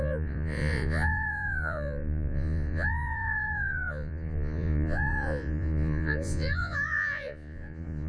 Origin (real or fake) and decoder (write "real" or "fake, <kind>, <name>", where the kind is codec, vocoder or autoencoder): fake, vocoder, Vocos